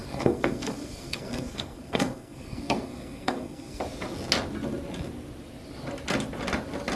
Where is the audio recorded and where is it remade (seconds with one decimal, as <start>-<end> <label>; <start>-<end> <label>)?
0.0-3.8 remade; 3.8-7.0 recorded